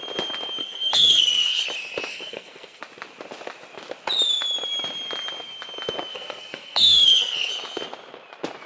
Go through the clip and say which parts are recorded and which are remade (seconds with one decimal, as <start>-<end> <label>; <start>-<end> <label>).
0.0-0.6 recorded; 0.6-1.6 remade; 1.6-2.1 recorded; 2.1-2.8 remade; 2.8-6.1 recorded; 6.1-7.5 remade; 7.5-8.7 recorded